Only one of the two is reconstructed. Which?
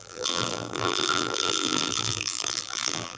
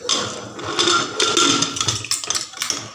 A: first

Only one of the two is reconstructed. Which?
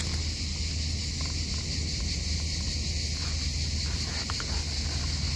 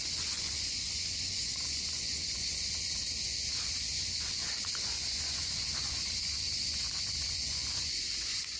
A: second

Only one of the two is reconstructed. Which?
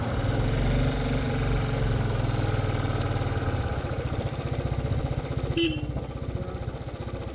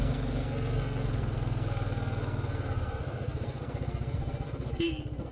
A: second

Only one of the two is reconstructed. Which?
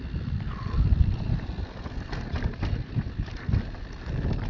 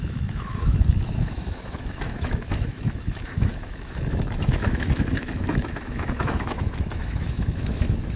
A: second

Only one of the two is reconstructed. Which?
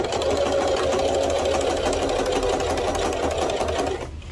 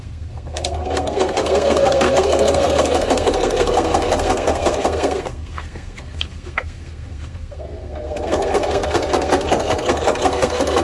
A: second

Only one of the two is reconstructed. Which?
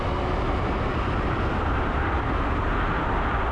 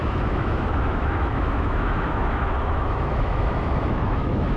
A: second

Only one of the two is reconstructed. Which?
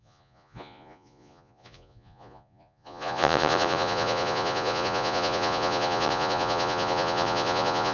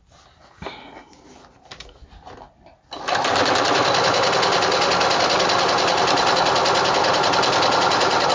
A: first